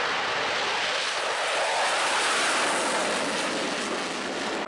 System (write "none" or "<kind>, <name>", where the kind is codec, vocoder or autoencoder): none